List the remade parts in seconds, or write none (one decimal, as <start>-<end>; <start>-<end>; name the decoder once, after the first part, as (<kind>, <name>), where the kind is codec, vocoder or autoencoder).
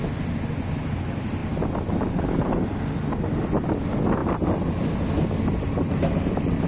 none